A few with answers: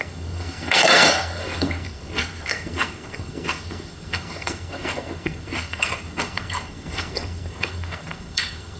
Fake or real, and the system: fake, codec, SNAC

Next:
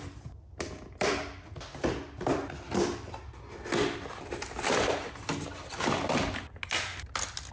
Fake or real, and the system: real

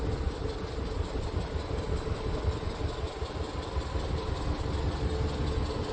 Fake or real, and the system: real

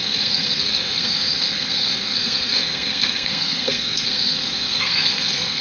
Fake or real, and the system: fake, codec, SNAC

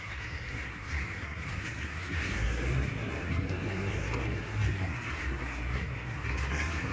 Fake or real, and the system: fake, codec, SNAC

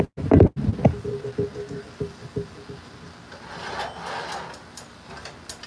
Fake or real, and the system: real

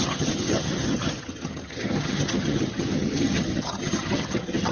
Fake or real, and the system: fake, vocoder, HiFi-GAN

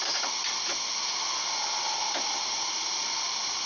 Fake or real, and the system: real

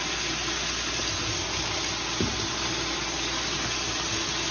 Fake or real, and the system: real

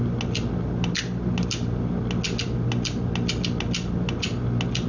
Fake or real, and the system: real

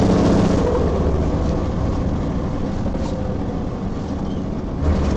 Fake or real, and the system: real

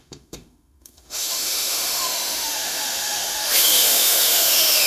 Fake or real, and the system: fake, autoencoder, DAC-VAE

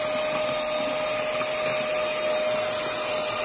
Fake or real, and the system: real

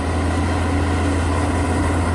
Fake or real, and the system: real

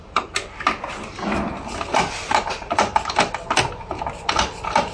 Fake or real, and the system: real